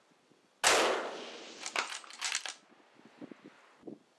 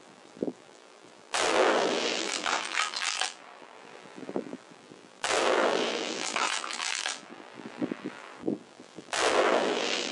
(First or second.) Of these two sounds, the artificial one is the second